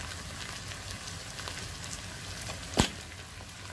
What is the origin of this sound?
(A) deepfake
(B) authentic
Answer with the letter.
B